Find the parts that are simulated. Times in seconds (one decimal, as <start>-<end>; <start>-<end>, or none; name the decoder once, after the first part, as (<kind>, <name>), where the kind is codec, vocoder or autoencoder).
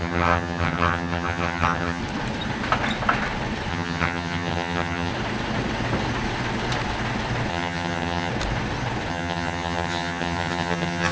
0.0-2.0 (vocoder, HiFi-GAN); 3.7-5.1; 7.5-8.3; 9.1-11.1